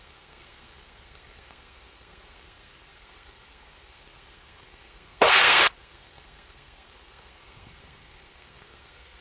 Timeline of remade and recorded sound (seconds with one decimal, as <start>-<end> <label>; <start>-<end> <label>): 0.0-9.2 remade